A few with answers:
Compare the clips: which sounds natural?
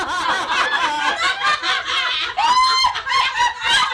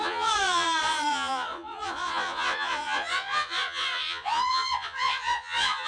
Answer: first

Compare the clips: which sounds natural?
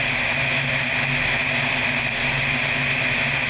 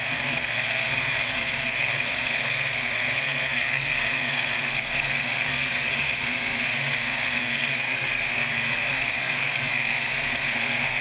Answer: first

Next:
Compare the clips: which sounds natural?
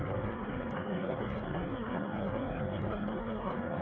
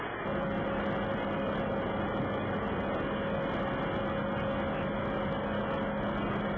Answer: second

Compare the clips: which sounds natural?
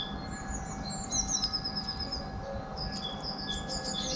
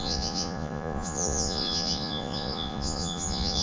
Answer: first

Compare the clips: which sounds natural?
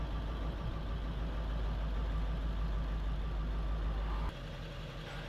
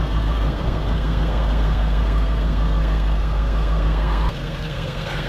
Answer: first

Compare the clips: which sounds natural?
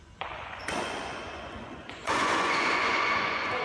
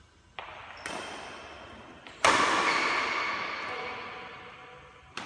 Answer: second